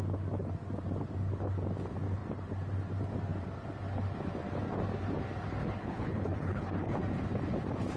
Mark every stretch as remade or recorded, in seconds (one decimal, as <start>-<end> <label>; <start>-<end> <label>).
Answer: 0.0-5.6 recorded; 5.6-7.0 remade; 7.0-8.0 recorded